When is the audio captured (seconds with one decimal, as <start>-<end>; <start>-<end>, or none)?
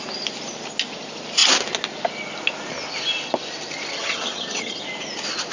0.0-3.9; 4.8-5.5